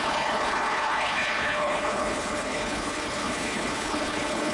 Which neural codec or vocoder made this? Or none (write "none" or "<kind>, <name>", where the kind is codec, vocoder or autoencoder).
codec, HILCodec